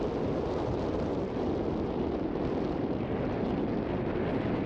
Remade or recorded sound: recorded